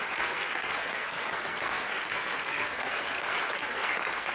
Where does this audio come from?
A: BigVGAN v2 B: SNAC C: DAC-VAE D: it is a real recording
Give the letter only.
B